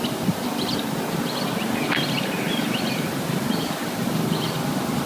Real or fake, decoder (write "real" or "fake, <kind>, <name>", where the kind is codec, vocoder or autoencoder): fake, vocoder, BigVGAN v2